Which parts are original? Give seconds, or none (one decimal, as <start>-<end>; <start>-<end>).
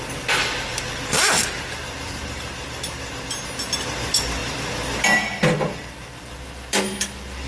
0.0-7.5